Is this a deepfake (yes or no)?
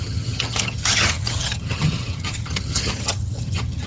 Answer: yes